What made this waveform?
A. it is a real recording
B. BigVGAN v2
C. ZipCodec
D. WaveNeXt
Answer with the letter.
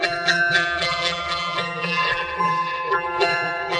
B